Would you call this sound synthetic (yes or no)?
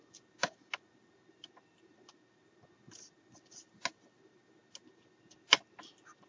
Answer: no